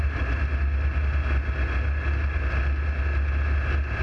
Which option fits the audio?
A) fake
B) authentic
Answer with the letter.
B